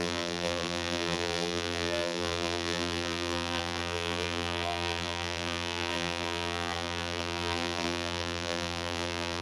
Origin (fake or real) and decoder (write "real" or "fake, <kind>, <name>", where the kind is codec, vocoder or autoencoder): fake, vocoder, BigVGAN v2